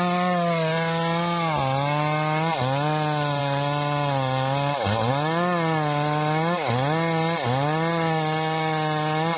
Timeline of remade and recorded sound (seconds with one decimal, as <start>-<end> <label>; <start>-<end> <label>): 0.0-9.4 recorded